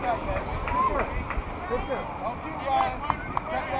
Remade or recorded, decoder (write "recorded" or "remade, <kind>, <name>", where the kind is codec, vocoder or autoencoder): recorded